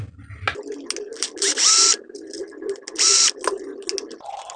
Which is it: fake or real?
real